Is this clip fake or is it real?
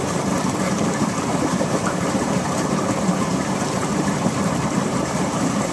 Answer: fake